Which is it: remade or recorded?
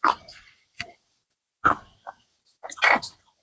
recorded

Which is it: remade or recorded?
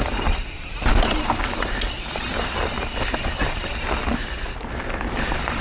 recorded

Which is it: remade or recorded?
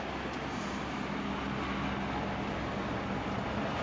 recorded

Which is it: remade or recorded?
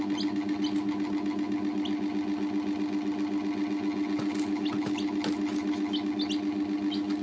recorded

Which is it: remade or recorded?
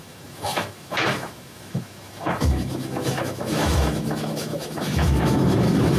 remade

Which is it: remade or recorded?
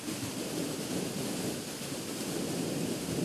remade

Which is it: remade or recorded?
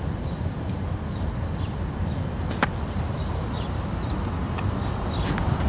recorded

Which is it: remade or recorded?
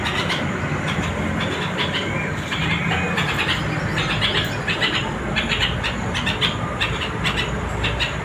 recorded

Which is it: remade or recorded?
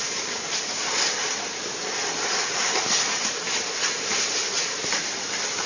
recorded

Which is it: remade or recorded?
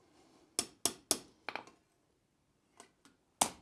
recorded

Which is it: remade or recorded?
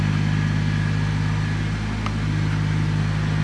recorded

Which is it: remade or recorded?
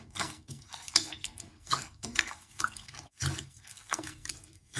remade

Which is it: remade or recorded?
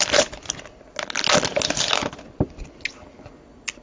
recorded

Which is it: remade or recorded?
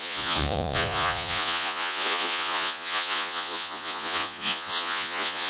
remade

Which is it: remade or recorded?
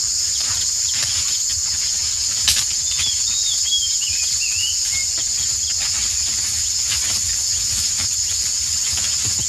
recorded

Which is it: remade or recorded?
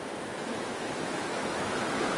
remade